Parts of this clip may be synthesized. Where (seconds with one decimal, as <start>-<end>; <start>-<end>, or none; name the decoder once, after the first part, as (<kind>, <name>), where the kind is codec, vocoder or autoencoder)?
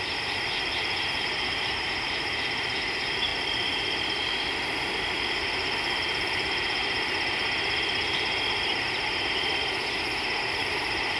0.0-3.3 (vocoder, BigVGAN v2); 5.2-6.8; 10.6-11.2